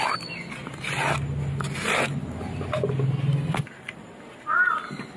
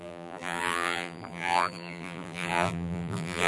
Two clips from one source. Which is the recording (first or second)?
first